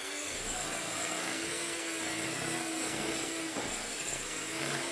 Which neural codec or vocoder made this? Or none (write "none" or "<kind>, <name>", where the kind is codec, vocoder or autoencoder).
codec, SNAC